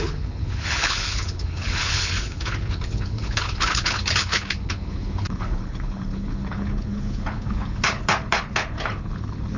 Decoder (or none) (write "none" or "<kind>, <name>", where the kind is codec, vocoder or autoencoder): codec, HILCodec